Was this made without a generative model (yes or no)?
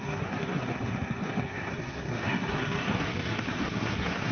no